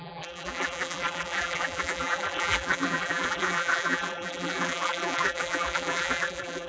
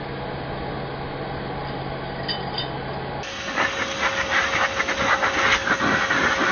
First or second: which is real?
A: second